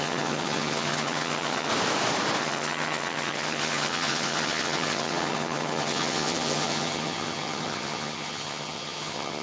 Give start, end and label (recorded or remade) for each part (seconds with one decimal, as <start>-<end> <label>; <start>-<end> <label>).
0.0-1.7 remade; 1.7-2.4 recorded; 2.4-9.4 remade